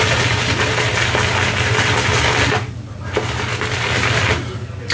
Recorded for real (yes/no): no